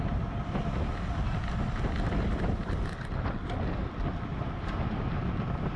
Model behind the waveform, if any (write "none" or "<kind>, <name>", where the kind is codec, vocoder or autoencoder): none